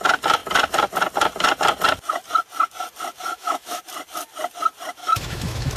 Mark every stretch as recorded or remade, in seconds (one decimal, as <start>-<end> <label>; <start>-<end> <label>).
0.0-3.3 recorded; 3.3-3.8 remade; 3.8-5.0 recorded; 5.0-5.8 remade